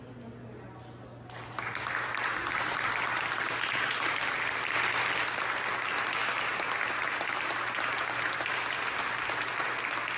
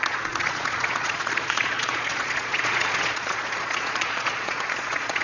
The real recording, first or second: first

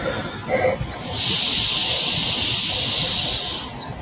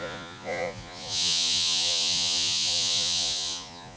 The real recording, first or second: first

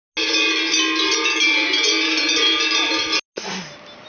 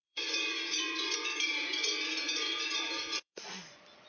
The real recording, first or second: first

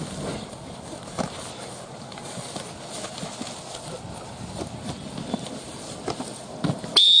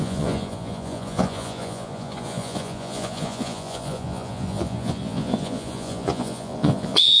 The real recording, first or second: first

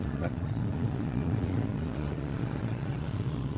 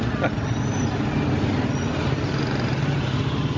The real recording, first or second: second